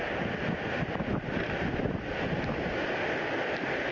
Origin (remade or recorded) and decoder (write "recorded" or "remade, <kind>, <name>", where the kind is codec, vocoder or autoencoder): recorded